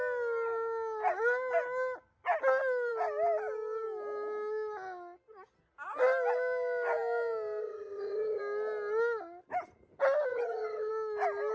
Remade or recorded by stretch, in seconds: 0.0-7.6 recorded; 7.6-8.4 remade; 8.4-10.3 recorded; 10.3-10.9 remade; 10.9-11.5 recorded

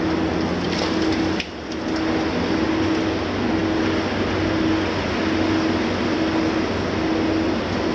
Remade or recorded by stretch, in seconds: 0.0-7.9 recorded

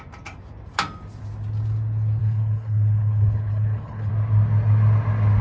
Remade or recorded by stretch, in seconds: 0.0-2.2 recorded; 2.2-4.1 remade; 4.1-5.4 recorded

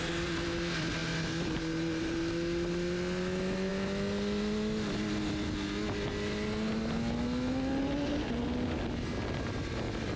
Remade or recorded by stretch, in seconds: 0.0-10.2 recorded

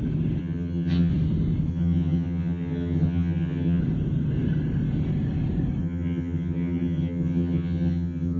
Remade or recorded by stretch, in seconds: 0.0-0.4 recorded; 0.4-1.1 remade; 1.1-1.7 recorded; 1.7-3.8 remade; 3.8-5.8 recorded; 5.8-8.4 remade